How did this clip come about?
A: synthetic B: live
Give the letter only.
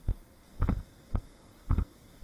A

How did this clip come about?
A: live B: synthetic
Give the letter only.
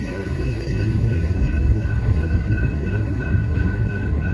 B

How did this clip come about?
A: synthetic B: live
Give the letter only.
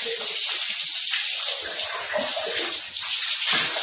B